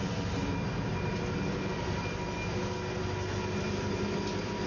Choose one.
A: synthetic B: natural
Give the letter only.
B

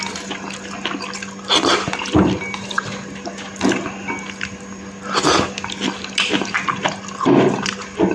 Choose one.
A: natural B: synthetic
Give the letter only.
A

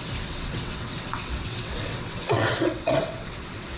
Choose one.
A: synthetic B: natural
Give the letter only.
A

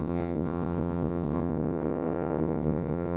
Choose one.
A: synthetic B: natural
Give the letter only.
A